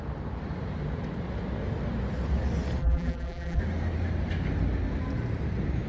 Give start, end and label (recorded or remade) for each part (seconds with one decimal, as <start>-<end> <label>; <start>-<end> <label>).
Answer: 0.0-2.8 recorded; 2.8-3.6 remade; 3.6-5.9 recorded